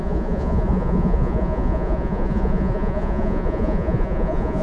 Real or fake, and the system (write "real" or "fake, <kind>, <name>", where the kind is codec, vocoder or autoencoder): fake, vocoder, Vocos